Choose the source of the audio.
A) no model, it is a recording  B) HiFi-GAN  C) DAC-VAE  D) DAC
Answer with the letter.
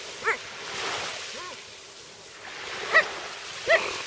A